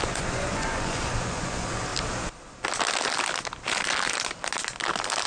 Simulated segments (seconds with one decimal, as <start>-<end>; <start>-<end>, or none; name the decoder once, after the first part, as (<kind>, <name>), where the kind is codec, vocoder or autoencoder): 0.0-1.9 (vocoder, Vocos)